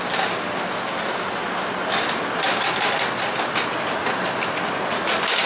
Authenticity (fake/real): real